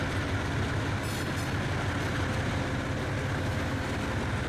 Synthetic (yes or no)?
no